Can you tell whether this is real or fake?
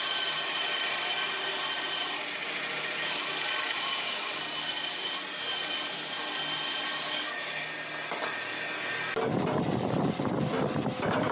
real